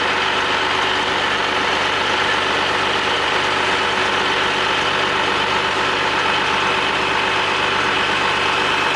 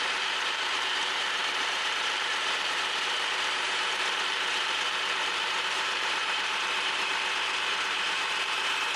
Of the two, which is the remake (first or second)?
second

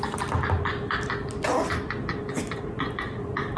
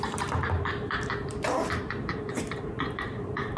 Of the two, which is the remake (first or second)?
second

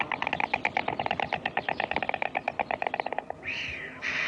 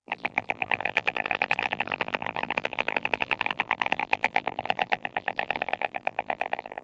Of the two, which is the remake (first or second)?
second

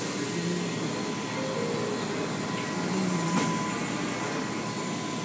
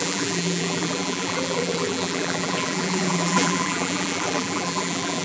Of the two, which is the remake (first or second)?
second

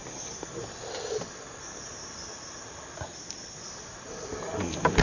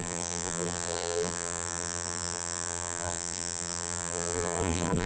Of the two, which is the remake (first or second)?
second